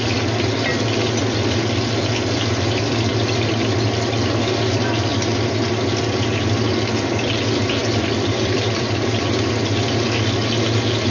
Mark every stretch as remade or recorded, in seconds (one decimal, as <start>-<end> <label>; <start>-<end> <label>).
0.0-7.8 recorded; 7.8-9.2 remade; 9.2-11.1 recorded